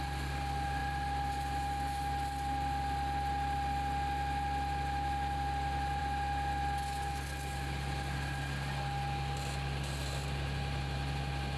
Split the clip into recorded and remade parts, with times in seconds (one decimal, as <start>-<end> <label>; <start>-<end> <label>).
0.0-11.6 recorded